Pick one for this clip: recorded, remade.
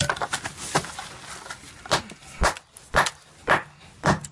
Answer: recorded